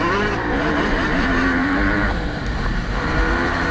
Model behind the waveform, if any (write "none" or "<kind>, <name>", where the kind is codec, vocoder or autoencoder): vocoder, BigVGAN v2